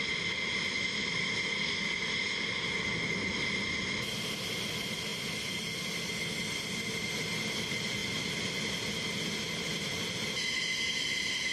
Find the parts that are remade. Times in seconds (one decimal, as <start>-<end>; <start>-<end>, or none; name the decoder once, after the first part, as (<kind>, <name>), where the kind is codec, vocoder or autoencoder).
none